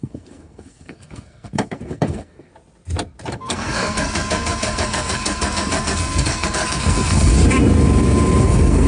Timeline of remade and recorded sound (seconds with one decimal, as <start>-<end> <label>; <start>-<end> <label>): 0.0-2.5 remade; 2.5-3.3 recorded; 3.3-7.3 remade; 7.3-8.4 recorded; 8.4-8.9 remade